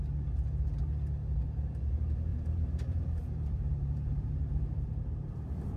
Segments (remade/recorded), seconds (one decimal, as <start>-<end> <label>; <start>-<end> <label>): 0.0-2.3 recorded; 2.3-5.8 remade